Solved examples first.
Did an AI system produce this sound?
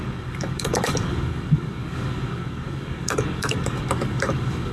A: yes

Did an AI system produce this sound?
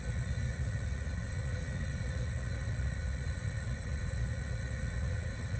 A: yes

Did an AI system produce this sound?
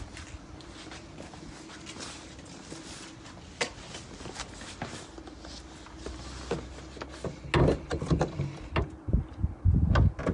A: no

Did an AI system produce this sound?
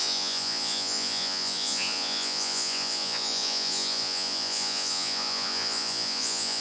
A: yes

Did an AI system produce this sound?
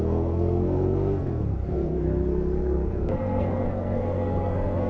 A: yes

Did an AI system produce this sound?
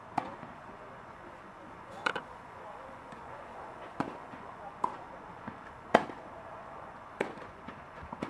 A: yes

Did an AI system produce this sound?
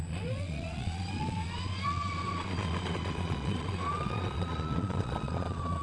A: yes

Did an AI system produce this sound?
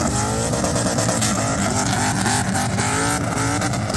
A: no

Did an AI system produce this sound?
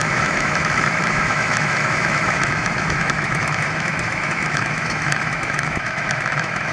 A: yes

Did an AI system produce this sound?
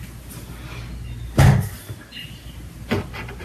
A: no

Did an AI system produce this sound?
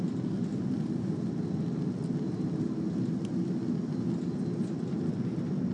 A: no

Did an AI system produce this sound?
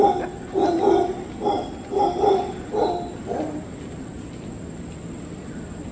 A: no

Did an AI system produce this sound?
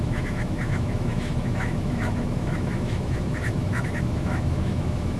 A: yes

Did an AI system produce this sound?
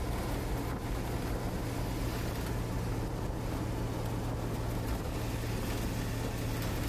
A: no